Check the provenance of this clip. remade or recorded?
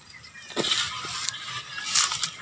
recorded